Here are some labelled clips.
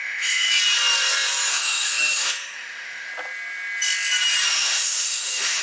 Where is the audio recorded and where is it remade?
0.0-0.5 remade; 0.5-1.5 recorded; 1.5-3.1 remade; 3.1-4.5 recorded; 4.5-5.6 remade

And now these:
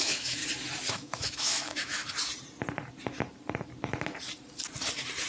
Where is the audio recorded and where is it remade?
0.0-0.4 remade; 0.4-0.9 recorded; 0.9-2.0 remade; 2.0-5.3 recorded

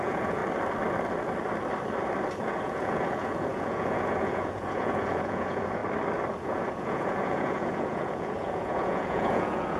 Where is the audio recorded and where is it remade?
0.0-0.4 remade; 0.4-2.5 recorded; 2.5-5.8 remade; 5.8-6.4 recorded; 6.4-9.8 remade

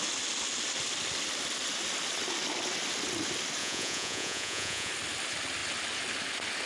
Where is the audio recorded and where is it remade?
0.0-3.6 recorded; 3.6-4.9 remade; 4.9-6.7 recorded

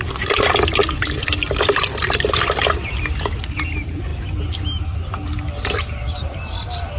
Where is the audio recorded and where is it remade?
0.0-0.8 recorded; 0.8-2.9 remade; 2.9-7.0 recorded

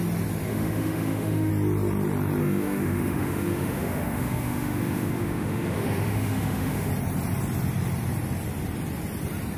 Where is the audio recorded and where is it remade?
0.0-0.5 recorded; 0.5-1.5 remade; 1.5-2.4 recorded; 2.4-6.9 remade; 6.9-9.6 recorded

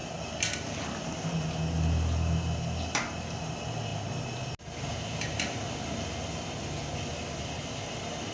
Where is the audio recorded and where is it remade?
0.0-8.3 recorded